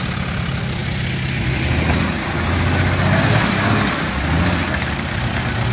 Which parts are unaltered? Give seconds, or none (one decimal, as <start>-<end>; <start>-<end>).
0.0-5.7